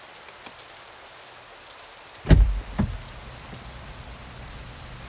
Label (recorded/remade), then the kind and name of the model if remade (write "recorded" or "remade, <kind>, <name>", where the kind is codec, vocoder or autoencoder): recorded